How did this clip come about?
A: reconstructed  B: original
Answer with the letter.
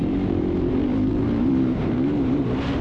A